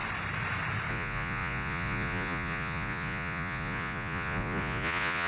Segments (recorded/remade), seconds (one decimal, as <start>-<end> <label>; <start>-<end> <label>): 0.0-0.9 recorded; 0.9-5.3 remade